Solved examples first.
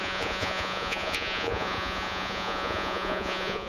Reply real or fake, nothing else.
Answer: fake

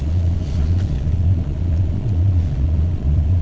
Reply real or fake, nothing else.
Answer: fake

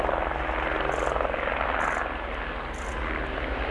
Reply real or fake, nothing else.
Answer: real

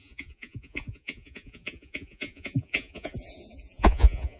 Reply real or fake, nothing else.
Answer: fake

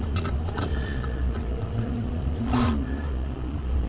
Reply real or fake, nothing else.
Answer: fake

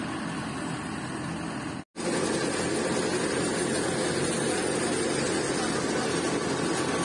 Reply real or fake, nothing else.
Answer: real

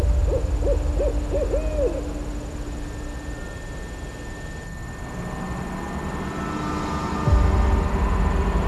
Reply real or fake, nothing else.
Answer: real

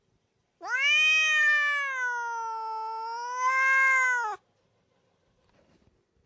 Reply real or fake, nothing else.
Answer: real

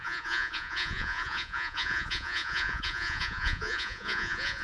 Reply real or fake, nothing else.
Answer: fake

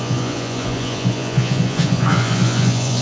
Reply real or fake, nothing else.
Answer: fake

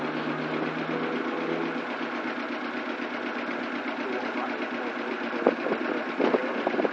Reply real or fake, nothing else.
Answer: real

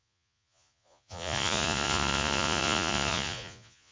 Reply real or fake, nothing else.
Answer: fake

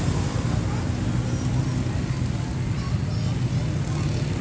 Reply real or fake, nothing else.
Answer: real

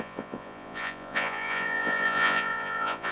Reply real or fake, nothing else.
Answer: fake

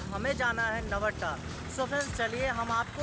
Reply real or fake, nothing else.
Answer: real